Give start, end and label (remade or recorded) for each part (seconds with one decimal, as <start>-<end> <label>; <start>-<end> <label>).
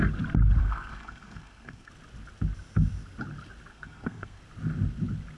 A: 0.0-0.6 recorded; 0.6-1.9 remade; 1.9-3.7 recorded; 3.7-4.4 remade; 4.4-5.4 recorded